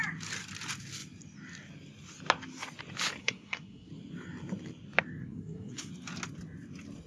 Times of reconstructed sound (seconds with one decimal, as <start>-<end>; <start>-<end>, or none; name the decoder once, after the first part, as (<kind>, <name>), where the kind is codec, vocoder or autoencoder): 3.2-3.9 (codec, SNAC); 5.2-5.9